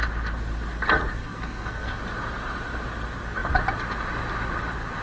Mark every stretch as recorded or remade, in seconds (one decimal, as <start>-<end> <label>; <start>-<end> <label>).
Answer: 0.0-1.2 recorded; 1.2-2.0 remade; 2.0-5.0 recorded